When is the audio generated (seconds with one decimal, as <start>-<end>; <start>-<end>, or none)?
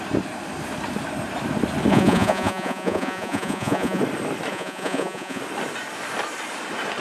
1.9-4.0; 4.5-5.4